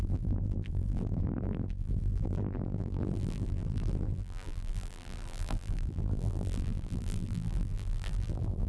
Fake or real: fake